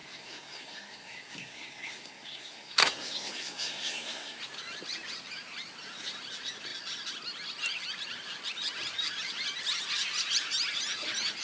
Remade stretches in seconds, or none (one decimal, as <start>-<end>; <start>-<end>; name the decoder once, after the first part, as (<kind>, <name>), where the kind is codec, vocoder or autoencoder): 0.0-4.4 (codec, SNAC)